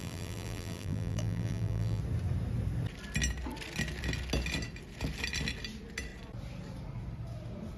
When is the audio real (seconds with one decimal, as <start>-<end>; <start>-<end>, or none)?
2.0-7.8